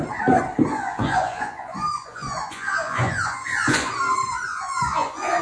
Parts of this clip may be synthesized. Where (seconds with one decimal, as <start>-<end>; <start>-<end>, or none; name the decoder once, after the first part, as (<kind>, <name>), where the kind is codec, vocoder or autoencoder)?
0.7-3.9 (vocoder, Vocos); 4.5-5.4